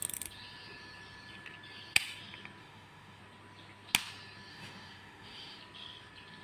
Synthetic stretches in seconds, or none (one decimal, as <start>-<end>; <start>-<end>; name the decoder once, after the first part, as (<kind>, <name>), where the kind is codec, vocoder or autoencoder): 2.6-3.2 (autoencoder, DAC-VAE); 4.5-5.6